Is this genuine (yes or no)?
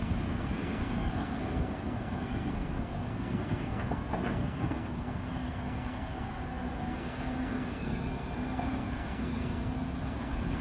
no